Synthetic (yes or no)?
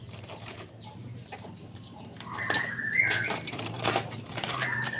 yes